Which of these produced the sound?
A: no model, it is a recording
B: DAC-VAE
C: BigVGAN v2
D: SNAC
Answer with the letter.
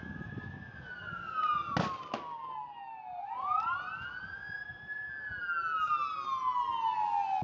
A